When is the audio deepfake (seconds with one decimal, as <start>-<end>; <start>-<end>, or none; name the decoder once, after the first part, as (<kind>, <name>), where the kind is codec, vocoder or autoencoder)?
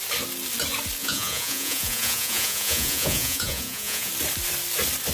1.0-4.1 (vocoder, Vocos)